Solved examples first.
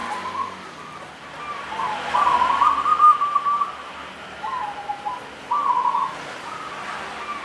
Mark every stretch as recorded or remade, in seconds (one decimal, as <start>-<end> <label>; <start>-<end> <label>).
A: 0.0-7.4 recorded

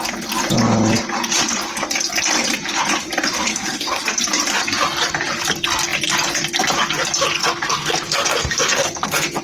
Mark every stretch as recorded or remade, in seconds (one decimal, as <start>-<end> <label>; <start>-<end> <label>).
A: 0.0-3.5 recorded; 3.5-4.0 remade; 4.0-7.4 recorded; 7.4-9.4 remade

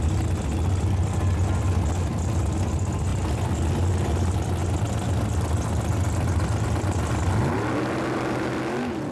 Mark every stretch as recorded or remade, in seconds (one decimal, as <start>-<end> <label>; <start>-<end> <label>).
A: 0.0-9.1 recorded

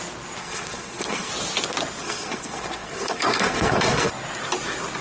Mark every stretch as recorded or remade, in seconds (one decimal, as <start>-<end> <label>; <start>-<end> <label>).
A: 0.0-0.4 recorded; 0.4-1.3 remade; 1.3-2.0 recorded; 2.0-4.1 remade; 4.1-5.0 recorded

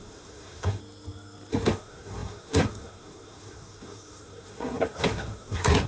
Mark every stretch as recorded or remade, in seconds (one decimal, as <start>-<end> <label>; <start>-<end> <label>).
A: 0.0-0.8 remade; 0.8-1.5 recorded; 1.5-5.9 remade

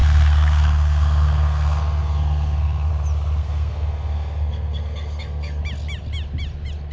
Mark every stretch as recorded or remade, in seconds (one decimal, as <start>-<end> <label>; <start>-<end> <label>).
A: 0.0-2.9 remade; 2.9-3.4 recorded; 3.4-5.6 remade; 5.6-6.9 recorded